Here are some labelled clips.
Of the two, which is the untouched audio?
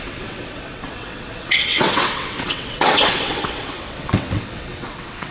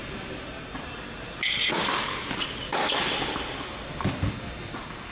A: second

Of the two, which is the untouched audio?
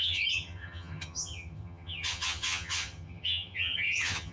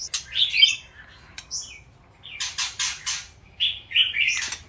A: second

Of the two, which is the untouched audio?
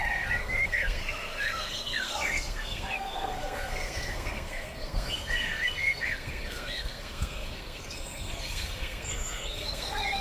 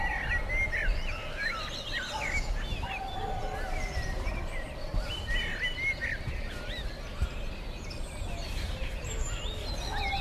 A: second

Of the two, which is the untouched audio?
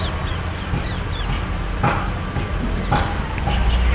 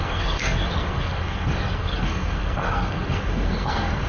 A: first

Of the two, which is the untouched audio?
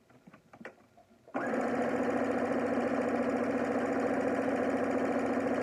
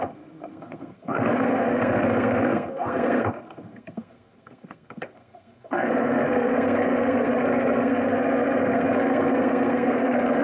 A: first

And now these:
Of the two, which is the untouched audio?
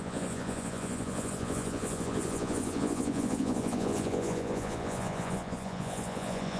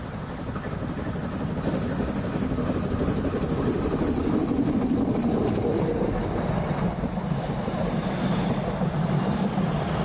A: second